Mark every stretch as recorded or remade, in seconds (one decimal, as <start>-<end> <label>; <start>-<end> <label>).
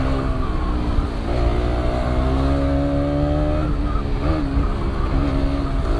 0.0-6.0 recorded